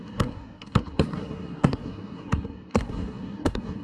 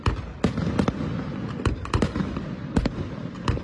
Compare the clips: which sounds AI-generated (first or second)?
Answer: first